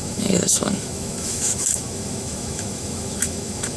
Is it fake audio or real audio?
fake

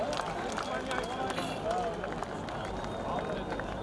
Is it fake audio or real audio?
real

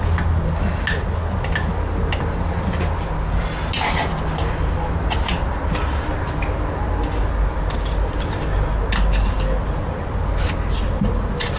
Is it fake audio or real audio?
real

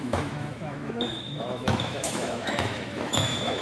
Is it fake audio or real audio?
fake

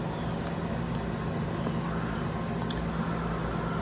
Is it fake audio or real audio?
real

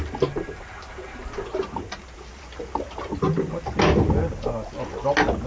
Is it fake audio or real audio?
real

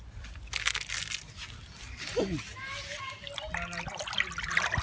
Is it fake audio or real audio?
real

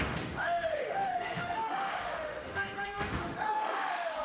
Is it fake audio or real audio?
fake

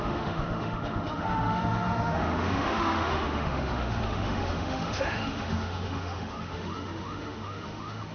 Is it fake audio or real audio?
fake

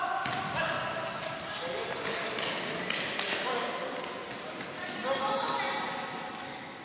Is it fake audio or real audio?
real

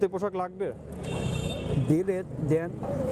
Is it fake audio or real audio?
real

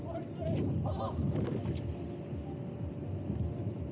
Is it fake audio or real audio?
real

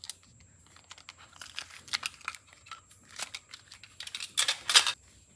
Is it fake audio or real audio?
real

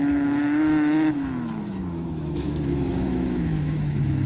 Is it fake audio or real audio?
fake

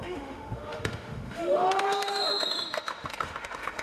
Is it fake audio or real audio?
fake